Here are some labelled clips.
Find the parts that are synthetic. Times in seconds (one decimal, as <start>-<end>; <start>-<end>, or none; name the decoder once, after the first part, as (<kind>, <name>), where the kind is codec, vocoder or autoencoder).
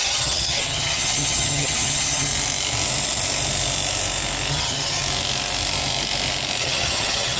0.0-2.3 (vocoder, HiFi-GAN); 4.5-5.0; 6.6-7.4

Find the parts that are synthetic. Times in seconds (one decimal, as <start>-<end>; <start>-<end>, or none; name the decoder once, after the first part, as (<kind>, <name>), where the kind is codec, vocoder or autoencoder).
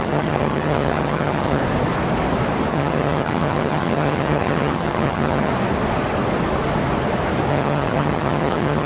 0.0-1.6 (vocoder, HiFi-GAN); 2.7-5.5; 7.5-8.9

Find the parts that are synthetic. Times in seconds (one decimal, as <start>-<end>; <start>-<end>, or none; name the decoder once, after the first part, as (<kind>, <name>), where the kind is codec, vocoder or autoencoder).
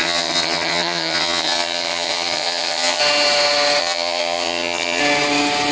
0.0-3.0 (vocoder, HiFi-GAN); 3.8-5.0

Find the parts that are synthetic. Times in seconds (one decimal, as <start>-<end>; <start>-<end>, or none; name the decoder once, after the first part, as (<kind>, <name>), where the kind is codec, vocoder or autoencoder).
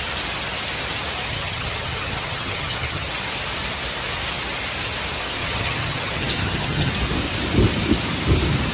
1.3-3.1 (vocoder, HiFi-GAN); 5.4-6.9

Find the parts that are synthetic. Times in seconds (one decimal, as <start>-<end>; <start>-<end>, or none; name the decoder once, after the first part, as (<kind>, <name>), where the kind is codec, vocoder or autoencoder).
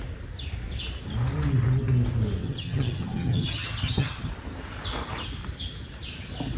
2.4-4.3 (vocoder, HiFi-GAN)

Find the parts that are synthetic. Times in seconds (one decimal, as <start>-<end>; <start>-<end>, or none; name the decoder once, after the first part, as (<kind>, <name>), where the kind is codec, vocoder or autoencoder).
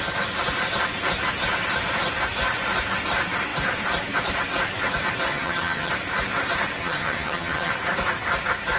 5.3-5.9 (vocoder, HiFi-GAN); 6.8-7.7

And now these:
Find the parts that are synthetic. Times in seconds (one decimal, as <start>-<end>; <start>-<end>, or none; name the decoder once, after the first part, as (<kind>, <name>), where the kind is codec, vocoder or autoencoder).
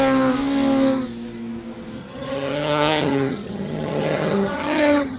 2.0-5.2 (vocoder, HiFi-GAN)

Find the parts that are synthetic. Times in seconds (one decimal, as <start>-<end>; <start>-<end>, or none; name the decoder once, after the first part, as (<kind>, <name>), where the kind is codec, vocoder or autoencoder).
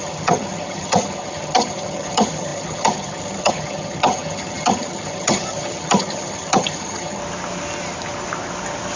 0.0-7.2 (vocoder, HiFi-GAN)